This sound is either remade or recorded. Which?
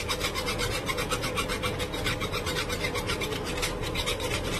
recorded